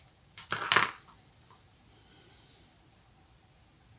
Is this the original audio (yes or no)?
yes